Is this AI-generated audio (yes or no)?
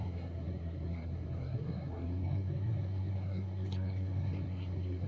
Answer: yes